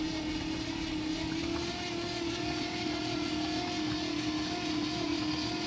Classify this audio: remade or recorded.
recorded